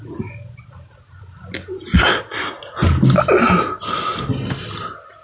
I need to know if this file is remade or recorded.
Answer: recorded